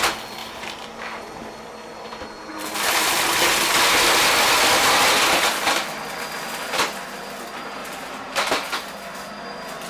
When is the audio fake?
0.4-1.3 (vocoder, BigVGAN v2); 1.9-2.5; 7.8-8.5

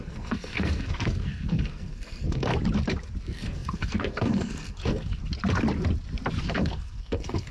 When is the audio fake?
0.0-2.5 (codec, SNAC); 3.2-5.2; 6.4-7.5

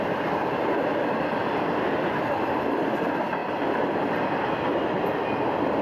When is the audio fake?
none

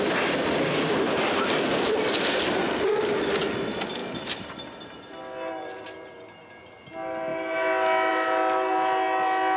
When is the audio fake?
none

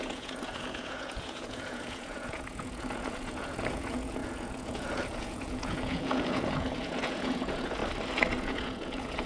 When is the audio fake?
0.0-7.8 (vocoder, Vocos); 8.4-9.3